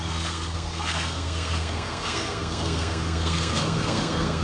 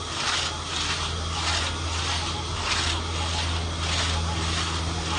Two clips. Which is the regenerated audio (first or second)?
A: first